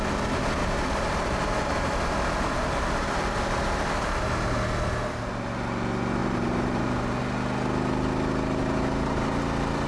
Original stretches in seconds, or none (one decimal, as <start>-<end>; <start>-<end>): 0.0-0.6; 1.9-6.2; 7.2-8.6; 9.4-9.9